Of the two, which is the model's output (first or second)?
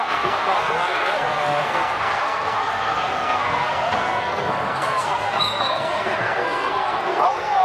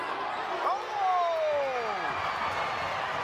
first